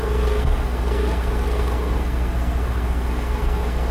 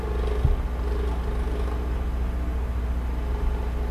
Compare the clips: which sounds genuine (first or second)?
second